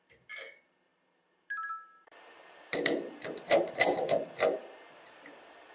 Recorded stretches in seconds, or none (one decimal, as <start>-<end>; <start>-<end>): 0.0-0.9; 4.3-5.7